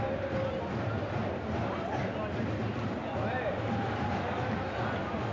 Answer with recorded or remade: recorded